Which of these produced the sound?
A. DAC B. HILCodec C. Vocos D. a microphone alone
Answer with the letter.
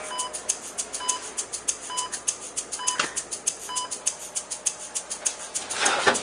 D